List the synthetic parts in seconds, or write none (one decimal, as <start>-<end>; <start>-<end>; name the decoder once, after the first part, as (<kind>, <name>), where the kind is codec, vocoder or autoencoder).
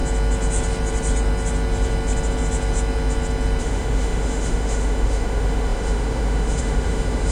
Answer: 3.6-7.3 (autoencoder, DAC-VAE)